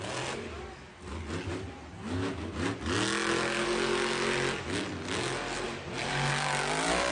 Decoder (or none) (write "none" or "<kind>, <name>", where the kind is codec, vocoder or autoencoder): none